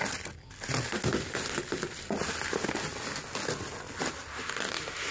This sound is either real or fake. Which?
real